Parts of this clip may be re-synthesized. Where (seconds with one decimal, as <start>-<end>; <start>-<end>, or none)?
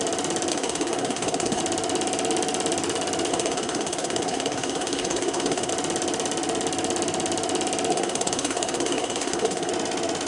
0.5-1.6; 3.3-5.7; 7.9-9.7